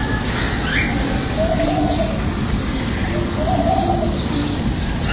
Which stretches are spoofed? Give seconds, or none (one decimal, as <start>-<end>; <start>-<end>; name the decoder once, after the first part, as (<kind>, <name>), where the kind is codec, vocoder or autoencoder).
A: none